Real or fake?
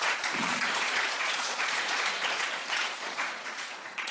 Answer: fake